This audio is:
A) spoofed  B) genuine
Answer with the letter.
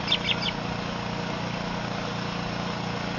B